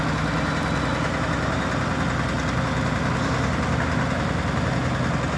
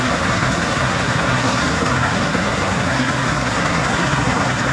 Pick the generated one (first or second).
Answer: second